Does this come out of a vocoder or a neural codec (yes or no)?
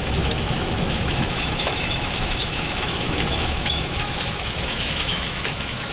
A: yes